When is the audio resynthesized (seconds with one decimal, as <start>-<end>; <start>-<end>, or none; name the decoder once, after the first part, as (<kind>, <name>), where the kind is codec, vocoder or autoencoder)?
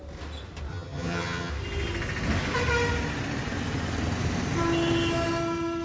0.7-1.5 (vocoder, HiFi-GAN)